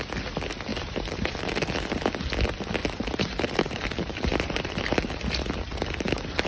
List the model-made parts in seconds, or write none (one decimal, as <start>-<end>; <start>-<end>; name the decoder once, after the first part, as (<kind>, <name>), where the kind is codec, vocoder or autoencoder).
0.7-1.6 (vocoder, BigVGAN v2); 2.8-6.5